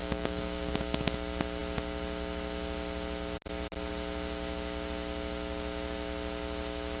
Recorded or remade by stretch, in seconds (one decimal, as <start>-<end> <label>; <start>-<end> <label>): 0.0-0.8 remade; 0.8-7.0 recorded